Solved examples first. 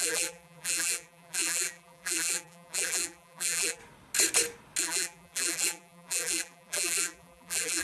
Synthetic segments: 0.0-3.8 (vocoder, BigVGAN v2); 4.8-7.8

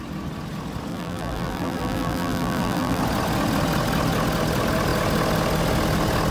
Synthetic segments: 0.9-3.0 (vocoder, BigVGAN v2)

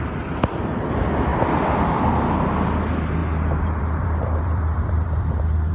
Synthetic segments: 3.2-5.7 (vocoder, BigVGAN v2)

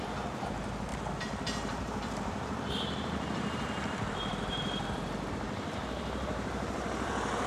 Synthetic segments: 0.0-7.5 (vocoder, BigVGAN v2)

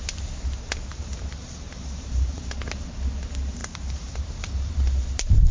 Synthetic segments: 0.9-2.5 (vocoder, BigVGAN v2); 3.6-5.1

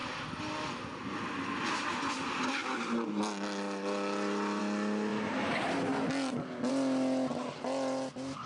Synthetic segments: none

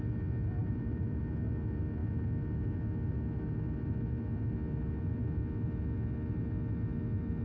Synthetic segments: 0.6-1.2 (vocoder, BigVGAN v2)